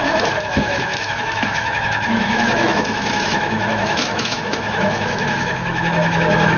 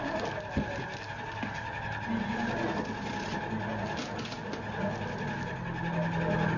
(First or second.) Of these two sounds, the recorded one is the second